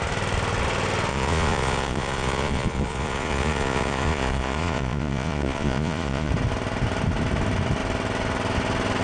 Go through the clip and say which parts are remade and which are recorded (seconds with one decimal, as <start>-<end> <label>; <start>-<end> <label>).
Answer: 0.0-1.1 recorded; 1.1-6.3 remade; 6.3-9.0 recorded

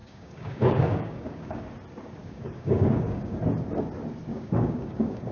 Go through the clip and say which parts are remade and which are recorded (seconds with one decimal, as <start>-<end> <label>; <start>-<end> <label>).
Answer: 0.0-1.6 remade; 1.6-2.2 recorded; 2.2-3.4 remade; 3.4-4.3 recorded; 4.3-5.3 remade

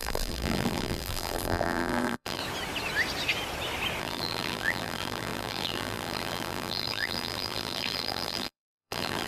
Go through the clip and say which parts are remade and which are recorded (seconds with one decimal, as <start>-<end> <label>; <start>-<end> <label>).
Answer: 0.0-2.4 remade; 2.4-4.0 recorded; 4.0-9.3 remade